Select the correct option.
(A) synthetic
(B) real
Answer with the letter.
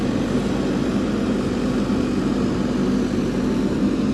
B